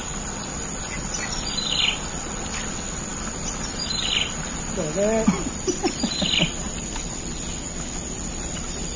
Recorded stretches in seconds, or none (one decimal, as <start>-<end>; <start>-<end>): 0.0-9.0